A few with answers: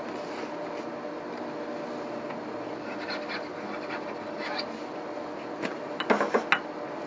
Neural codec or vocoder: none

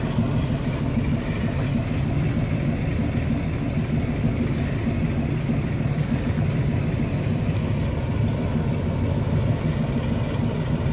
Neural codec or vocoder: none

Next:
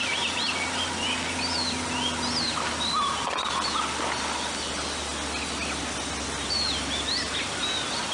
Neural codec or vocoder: none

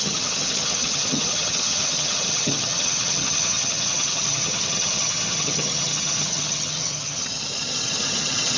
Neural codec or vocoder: vocoder, HiFi-GAN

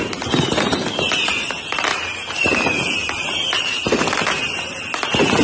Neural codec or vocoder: none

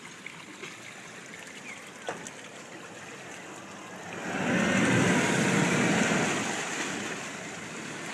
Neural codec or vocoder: none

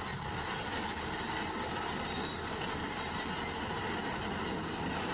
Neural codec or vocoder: none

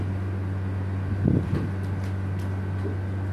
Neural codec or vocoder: none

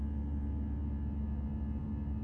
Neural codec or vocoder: none